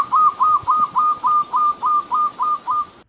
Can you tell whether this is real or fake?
real